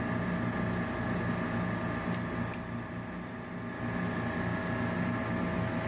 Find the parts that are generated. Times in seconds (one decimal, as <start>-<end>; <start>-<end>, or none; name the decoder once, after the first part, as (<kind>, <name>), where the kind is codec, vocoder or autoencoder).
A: none